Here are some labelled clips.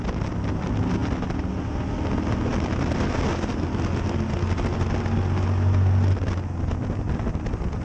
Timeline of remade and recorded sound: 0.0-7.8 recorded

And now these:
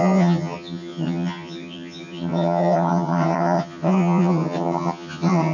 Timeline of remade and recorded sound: 0.0-5.5 remade

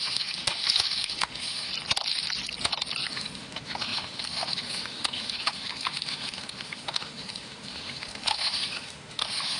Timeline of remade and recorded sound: 0.0-1.7 remade; 1.7-3.1 recorded; 3.1-9.6 remade

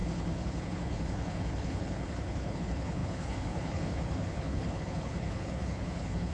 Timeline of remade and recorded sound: 0.0-6.3 remade